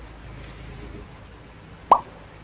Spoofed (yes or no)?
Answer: no